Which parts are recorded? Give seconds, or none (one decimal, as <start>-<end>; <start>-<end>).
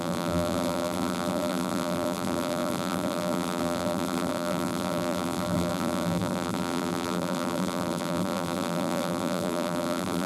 none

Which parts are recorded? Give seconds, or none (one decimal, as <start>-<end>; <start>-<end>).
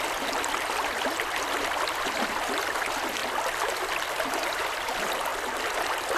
none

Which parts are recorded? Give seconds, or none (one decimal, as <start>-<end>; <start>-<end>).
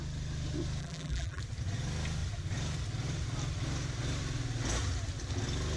0.0-0.8; 1.4-5.8